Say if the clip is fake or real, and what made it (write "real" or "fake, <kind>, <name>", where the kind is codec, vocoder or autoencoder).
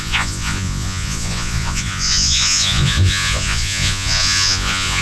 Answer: fake, vocoder, Vocos